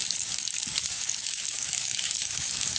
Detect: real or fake fake